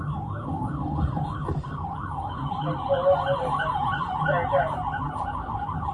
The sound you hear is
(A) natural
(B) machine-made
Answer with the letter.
B